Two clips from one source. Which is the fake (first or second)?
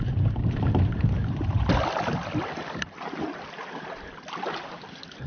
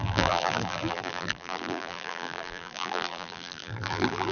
second